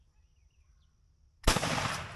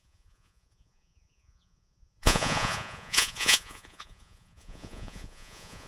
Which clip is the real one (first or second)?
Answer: first